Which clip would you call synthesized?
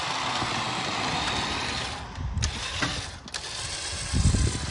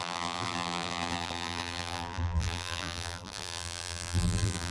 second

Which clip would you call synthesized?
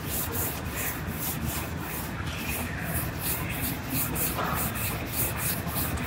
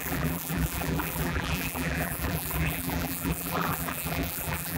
second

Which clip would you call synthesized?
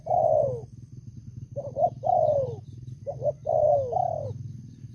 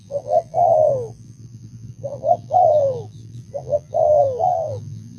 second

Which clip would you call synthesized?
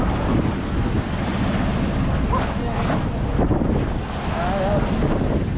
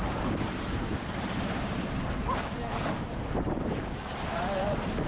second